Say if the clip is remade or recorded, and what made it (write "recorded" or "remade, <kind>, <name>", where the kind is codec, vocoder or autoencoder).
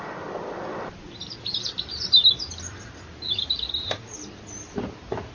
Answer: recorded